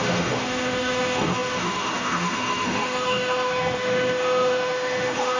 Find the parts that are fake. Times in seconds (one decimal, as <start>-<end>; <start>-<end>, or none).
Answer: 0.0-5.4